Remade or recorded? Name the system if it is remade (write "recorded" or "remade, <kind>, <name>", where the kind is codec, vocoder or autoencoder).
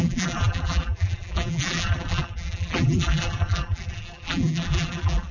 remade, vocoder, BigVGAN v2